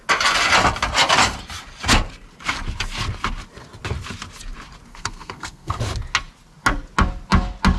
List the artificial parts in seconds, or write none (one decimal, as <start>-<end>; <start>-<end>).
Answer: 4.9-5.8